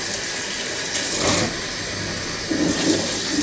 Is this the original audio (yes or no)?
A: yes